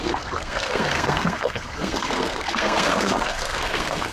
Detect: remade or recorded remade